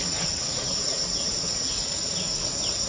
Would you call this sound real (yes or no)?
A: no